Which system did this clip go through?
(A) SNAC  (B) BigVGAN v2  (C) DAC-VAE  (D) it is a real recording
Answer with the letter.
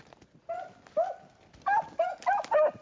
D